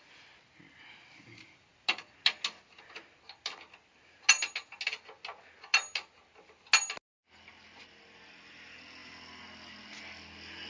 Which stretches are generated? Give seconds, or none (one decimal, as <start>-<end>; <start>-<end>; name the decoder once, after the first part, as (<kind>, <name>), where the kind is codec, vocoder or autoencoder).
none